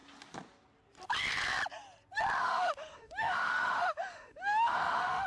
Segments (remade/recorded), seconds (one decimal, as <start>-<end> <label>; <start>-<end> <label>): 0.0-2.4 recorded; 2.4-5.3 remade